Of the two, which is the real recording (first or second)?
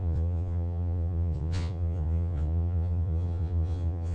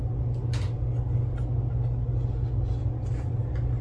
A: second